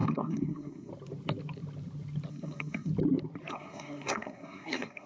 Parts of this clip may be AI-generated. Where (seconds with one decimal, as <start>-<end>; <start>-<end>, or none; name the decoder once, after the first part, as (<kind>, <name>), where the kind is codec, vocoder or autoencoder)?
0.0-0.9 (codec, SNAC); 2.3-2.9; 3.5-5.1